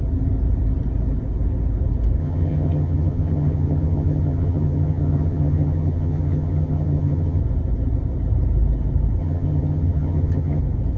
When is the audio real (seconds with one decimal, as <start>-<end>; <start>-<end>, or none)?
0.0-2.2; 7.4-9.2; 10.6-11.0